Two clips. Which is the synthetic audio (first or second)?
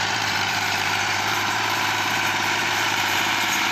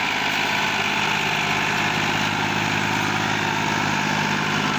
first